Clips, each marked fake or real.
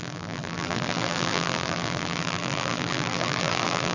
fake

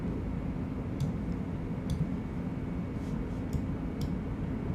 real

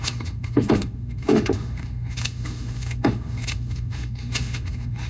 fake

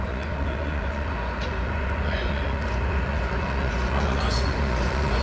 fake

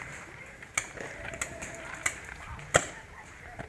real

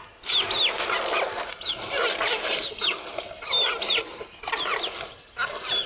real